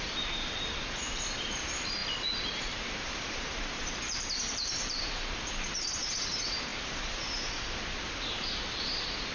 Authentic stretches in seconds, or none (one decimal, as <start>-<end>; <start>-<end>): 2.0-2.6